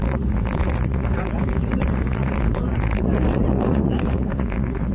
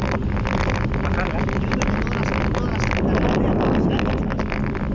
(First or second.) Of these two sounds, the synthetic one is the first